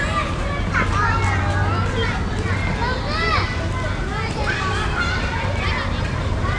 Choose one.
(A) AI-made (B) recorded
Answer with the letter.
B